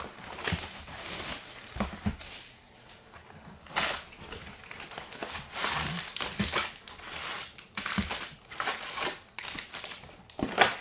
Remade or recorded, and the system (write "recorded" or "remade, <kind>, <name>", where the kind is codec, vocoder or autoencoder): recorded